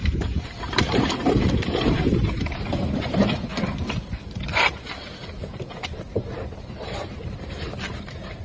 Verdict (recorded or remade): remade